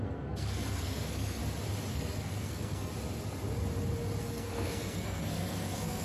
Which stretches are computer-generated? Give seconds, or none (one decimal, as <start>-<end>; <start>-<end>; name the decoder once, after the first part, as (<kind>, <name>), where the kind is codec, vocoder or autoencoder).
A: 0.0-1.4 (codec, SNAC); 1.9-2.9; 4.2-6.0